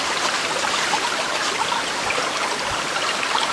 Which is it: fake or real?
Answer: real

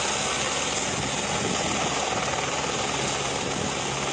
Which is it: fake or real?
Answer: real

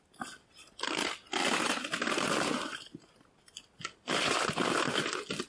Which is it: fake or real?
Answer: real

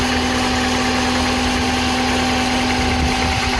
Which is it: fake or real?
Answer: real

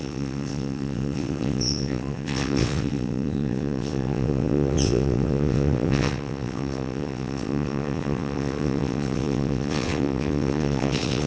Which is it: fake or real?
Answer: fake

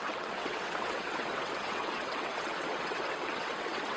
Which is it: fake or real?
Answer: fake